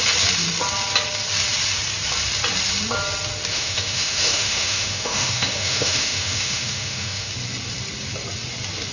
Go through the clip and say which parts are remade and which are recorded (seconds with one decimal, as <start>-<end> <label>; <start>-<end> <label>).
0.0-3.5 recorded; 3.5-7.3 remade; 7.3-8.9 recorded